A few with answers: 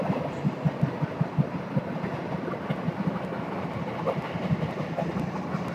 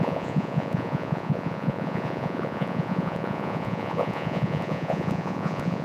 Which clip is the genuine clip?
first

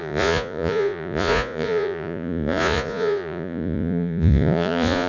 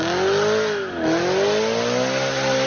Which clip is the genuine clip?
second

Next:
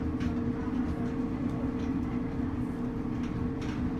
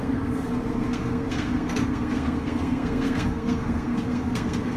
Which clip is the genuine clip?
first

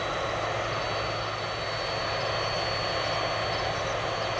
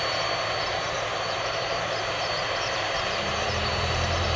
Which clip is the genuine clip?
first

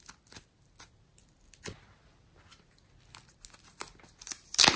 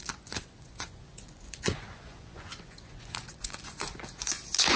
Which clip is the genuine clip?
first